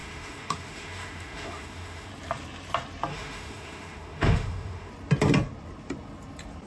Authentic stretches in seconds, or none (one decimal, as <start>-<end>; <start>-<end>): 2.1-3.1; 4.9-6.7